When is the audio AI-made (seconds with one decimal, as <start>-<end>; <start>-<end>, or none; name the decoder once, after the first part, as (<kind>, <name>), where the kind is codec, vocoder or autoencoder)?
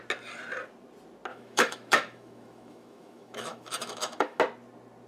1.3-4.4 (autoencoder, DAC-VAE)